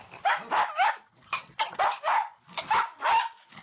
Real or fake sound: real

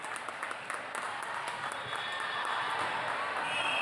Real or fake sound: real